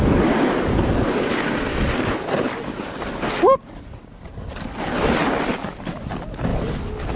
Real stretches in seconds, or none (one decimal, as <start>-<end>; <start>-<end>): 0.0-7.2